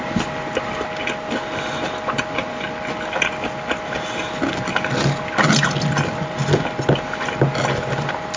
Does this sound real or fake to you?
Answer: real